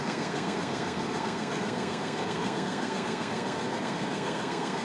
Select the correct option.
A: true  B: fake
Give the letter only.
B